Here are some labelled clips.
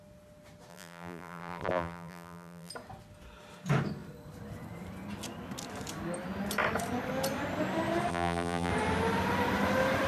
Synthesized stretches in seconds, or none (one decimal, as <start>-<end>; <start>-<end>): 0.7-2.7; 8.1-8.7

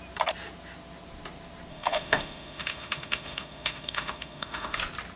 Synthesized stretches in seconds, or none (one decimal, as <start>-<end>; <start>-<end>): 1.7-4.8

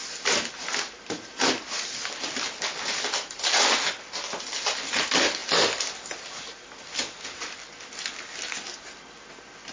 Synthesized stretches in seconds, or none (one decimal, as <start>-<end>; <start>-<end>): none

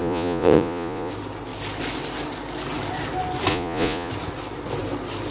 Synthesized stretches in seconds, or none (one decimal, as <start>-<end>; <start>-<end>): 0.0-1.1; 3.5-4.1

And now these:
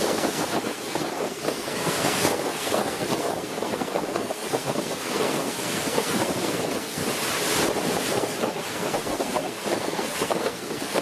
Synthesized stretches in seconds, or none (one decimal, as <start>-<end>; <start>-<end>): 0.0-7.0; 8.1-11.0

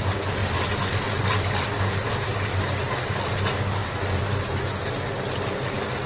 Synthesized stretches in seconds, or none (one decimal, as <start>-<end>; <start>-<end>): 0.4-1.2

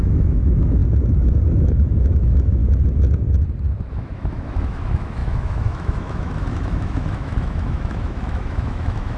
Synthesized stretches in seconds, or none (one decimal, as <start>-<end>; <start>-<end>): 0.0-0.8; 1.6-2.6; 3.9-9.2